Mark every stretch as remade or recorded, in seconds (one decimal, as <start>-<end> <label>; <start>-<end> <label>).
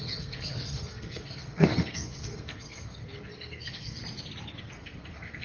0.0-4.0 remade; 4.0-4.6 recorded; 4.6-5.4 remade